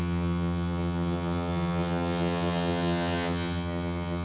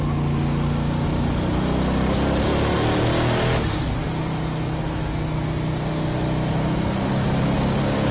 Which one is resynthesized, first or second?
first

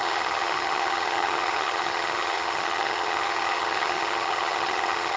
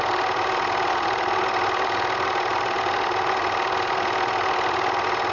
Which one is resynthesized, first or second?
first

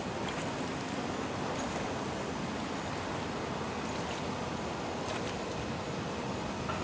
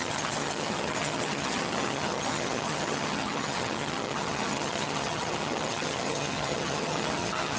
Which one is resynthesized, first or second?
second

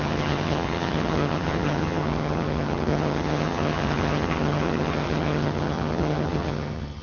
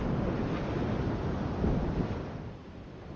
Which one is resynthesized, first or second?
first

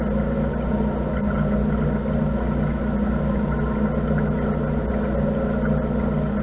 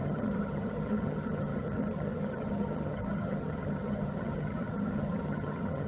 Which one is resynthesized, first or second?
second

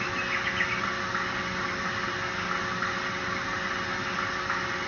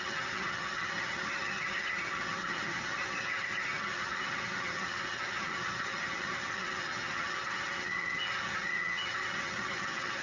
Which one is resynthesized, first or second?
second